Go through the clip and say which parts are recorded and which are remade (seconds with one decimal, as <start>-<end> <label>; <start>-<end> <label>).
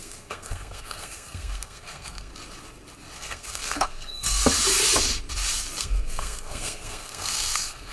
0.0-2.3 remade; 2.3-3.2 recorded; 3.2-4.4 remade; 4.4-5.8 recorded; 5.8-7.9 remade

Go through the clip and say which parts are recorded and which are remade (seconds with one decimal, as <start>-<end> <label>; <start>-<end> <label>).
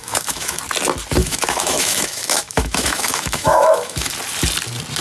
0.0-0.6 remade; 0.6-1.2 recorded; 1.2-4.1 remade; 4.1-5.0 recorded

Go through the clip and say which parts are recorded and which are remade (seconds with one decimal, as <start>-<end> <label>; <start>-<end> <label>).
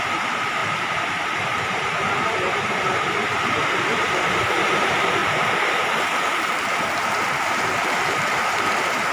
0.0-9.1 remade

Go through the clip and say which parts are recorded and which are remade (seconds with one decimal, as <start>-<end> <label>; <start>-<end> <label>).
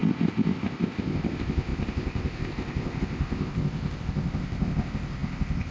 0.0-5.7 remade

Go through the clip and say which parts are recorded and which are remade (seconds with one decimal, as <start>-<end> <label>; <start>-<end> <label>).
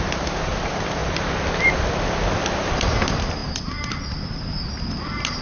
0.0-5.4 recorded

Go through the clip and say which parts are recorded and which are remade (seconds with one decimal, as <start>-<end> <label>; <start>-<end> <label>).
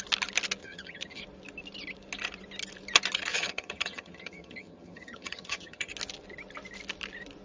0.0-0.6 recorded; 0.6-1.2 remade; 1.2-3.3 recorded; 3.3-5.9 remade; 5.9-7.4 recorded